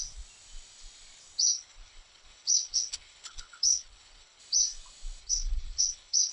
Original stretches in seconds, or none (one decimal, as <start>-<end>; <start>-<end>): 0.0-1.4; 4.4-5.2